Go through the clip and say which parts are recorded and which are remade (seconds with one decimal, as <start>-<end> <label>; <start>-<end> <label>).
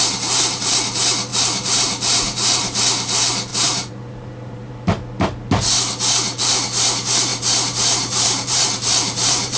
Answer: 0.0-1.3 recorded; 1.3-2.8 remade; 2.8-3.5 recorded; 3.5-4.7 remade; 4.7-7.3 recorded; 7.3-9.6 remade